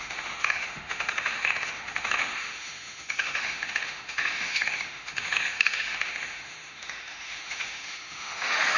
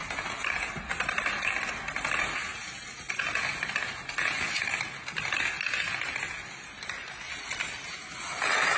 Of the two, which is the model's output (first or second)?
first